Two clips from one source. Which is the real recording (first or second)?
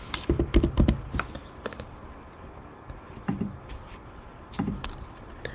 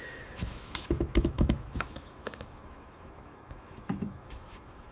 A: first